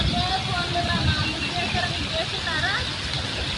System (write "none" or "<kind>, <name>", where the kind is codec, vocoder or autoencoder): none